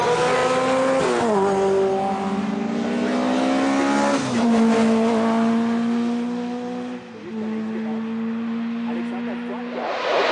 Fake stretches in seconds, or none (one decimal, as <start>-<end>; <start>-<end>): none

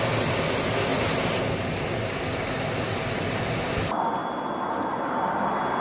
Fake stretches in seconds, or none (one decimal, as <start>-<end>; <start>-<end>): none

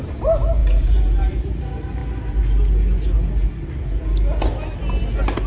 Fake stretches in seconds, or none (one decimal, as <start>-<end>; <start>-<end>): 0.0-2.0

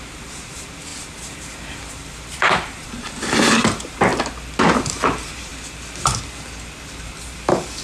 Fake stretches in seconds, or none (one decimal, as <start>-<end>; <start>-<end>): 0.0-4.1; 4.8-5.5; 7.1-7.8